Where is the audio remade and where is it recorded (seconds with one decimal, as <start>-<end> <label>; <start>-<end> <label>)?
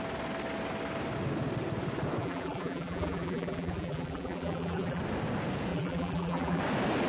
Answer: 0.0-2.2 recorded; 2.2-5.0 remade; 5.0-5.7 recorded; 5.7-6.6 remade; 6.6-7.1 recorded